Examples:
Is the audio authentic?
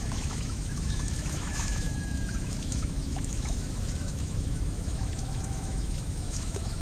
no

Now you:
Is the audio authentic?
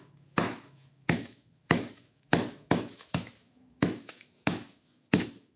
no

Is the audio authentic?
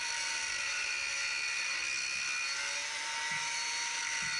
yes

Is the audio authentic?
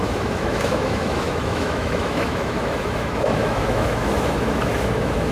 no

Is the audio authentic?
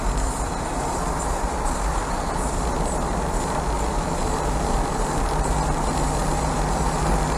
yes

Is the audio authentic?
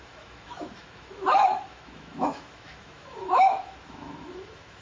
no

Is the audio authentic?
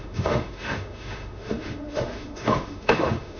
no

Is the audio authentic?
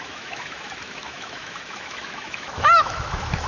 no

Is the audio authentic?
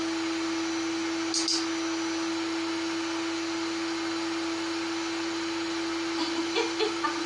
yes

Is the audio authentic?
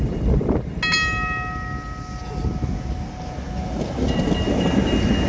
yes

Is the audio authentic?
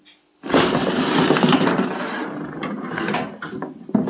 yes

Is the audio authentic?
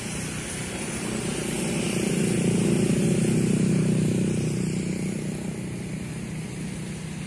yes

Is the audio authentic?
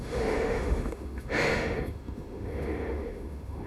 no